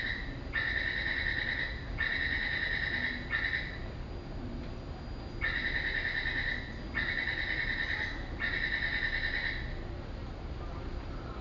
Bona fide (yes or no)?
yes